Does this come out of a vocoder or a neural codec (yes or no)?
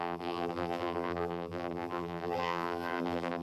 yes